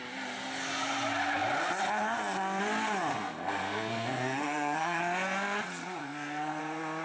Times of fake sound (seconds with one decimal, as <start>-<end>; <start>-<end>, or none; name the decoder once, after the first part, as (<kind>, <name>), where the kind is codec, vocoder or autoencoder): 3.1-5.0 (codec, SNAC); 6.0-6.6